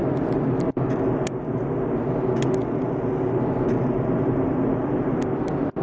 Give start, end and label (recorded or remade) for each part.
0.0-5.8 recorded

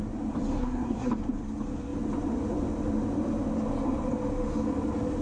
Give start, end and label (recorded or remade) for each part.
0.0-0.6 recorded; 0.6-1.1 remade; 1.1-5.2 recorded

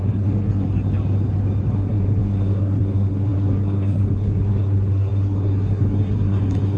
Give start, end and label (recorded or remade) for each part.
0.0-0.7 remade; 0.7-1.7 recorded; 1.7-6.8 remade

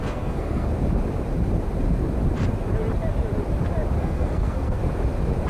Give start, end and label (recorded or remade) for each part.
0.0-0.7 remade; 0.7-4.0 recorded; 4.0-4.8 remade; 4.8-5.5 recorded

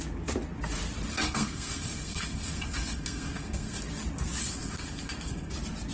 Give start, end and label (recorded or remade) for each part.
0.0-1.1 recorded; 1.1-3.8 remade; 3.8-4.4 recorded; 4.4-5.5 remade; 5.5-5.9 recorded

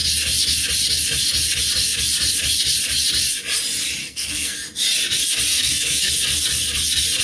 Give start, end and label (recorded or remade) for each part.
0.0-4.0 recorded; 4.0-4.6 remade; 4.6-5.5 recorded; 5.5-6.1 remade; 6.1-7.2 recorded

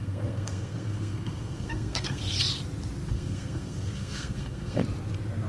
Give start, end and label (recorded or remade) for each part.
0.0-2.2 remade; 2.2-3.1 recorded; 3.1-4.8 remade; 4.8-5.5 recorded